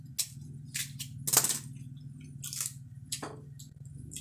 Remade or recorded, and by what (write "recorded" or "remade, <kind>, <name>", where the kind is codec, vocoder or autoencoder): recorded